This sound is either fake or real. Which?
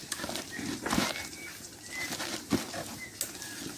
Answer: real